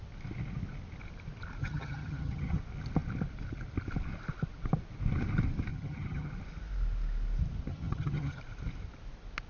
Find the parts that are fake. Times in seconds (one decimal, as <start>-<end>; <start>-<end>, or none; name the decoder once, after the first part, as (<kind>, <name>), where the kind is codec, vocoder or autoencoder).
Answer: 1.6-2.6 (vocoder, HiFi-GAN); 5.7-6.3; 7.7-8.4